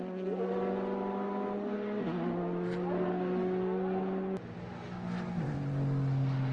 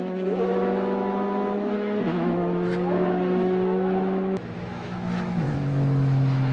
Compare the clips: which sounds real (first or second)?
first